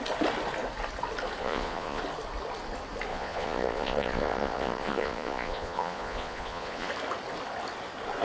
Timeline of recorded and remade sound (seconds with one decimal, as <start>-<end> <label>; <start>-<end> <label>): 0.0-1.4 recorded; 1.4-2.0 remade; 2.0-3.1 recorded; 3.1-6.9 remade; 6.9-8.2 recorded